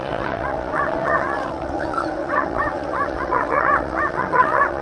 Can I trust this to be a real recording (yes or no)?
no